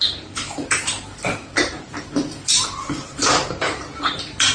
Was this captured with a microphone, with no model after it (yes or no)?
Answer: no